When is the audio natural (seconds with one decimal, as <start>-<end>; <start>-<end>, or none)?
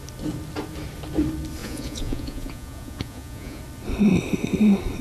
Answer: 0.0-1.6; 3.6-5.0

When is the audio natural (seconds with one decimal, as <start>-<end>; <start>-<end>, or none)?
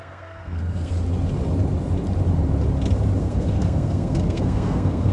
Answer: 0.9-3.2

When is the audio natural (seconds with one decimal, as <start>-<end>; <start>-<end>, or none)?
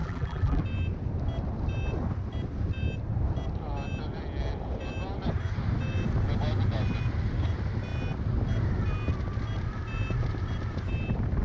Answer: 0.6-11.4